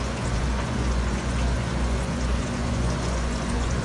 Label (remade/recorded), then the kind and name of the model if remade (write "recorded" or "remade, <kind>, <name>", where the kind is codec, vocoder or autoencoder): remade, vocoder, Vocos